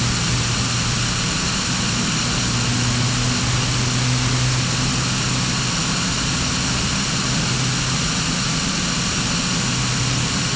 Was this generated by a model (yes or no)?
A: no